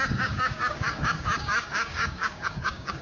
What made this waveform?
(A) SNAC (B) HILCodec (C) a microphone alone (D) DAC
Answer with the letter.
D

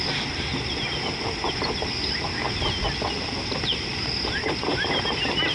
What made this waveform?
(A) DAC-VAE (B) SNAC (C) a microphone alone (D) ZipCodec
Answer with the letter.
C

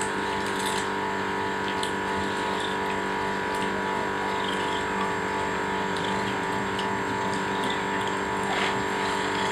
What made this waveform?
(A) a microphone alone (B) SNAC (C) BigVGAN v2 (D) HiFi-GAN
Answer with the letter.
A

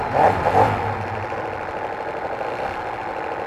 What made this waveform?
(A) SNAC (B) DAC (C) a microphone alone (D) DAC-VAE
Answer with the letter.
C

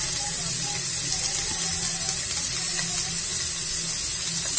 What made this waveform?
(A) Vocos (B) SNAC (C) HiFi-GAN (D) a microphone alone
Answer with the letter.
D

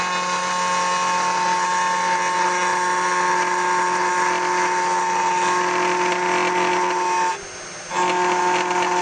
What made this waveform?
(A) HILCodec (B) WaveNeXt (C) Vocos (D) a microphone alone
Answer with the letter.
D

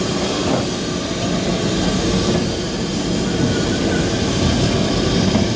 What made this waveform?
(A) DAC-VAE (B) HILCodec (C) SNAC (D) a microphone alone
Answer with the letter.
D